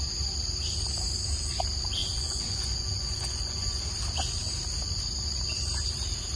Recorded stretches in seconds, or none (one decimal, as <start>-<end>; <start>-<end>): 0.0-2.0; 3.8-6.4